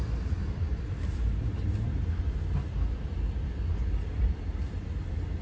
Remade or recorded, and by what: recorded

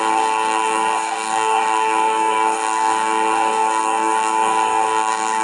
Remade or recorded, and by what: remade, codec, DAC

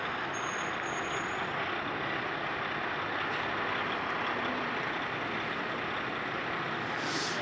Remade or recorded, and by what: recorded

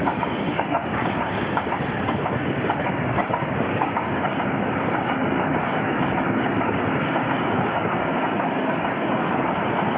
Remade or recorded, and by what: remade, codec, DAC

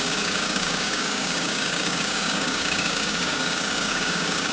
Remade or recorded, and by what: remade, codec, DAC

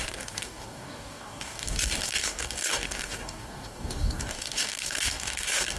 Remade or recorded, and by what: remade, codec, DAC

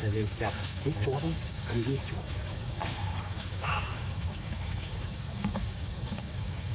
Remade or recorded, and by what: remade, codec, DAC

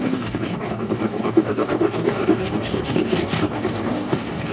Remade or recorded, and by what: remade, codec, DAC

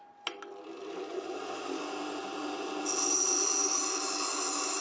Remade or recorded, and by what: recorded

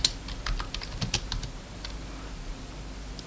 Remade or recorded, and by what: recorded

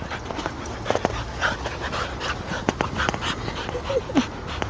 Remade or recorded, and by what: recorded